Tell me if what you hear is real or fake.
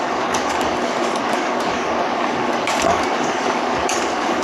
fake